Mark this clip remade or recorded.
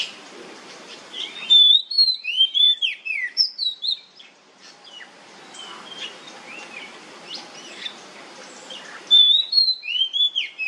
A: remade